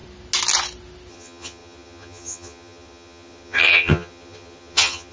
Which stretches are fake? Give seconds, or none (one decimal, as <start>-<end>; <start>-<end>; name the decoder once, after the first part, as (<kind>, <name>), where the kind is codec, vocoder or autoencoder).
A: 1.1-5.1 (vocoder, HiFi-GAN)